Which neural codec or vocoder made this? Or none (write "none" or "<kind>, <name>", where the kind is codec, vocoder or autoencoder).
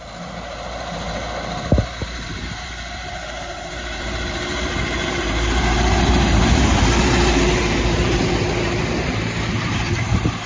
vocoder, BigVGAN v2